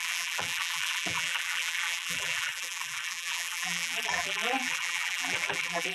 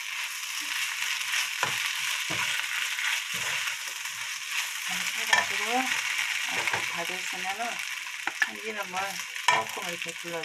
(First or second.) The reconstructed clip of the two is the first